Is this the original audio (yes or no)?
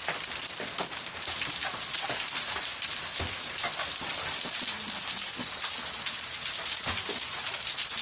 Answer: yes